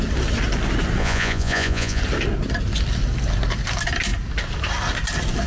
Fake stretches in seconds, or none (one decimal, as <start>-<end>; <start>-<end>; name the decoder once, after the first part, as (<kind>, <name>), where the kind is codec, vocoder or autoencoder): 1.0-2.0 (vocoder, Vocos)